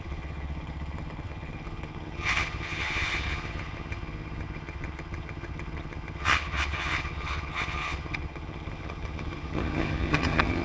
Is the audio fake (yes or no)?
yes